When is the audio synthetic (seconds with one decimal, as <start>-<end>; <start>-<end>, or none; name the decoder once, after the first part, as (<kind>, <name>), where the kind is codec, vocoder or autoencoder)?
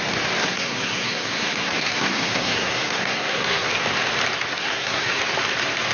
0.4-3.7 (codec, SNAC); 4.6-5.2